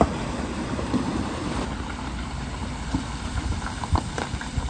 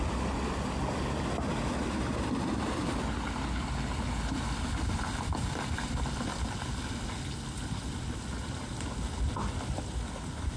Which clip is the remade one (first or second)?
first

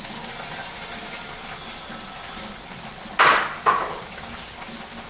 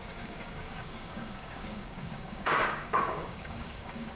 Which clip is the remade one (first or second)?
second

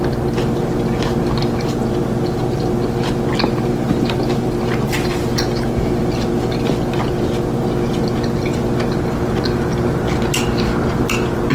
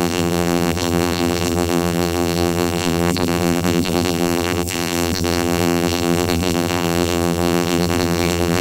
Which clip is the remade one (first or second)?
second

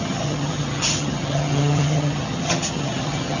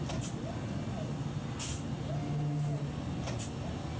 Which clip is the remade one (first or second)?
first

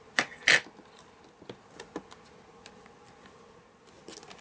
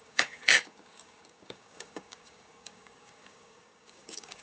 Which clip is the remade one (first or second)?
second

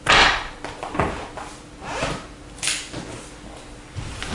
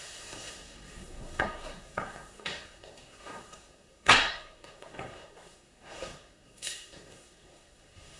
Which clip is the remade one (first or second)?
second